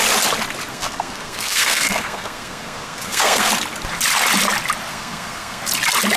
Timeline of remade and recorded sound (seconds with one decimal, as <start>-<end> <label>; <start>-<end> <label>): 0.0-0.7 recorded; 0.7-3.5 remade; 3.5-4.9 recorded; 4.9-5.6 remade; 5.6-6.2 recorded